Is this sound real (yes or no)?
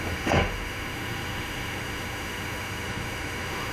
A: no